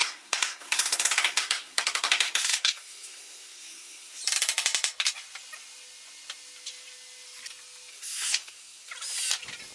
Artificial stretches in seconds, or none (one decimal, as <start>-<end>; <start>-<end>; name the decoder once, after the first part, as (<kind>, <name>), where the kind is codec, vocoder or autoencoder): 0.0-4.2 (codec, SNAC); 7.9-8.9